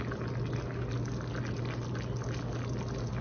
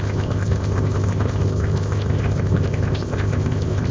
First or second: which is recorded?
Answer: first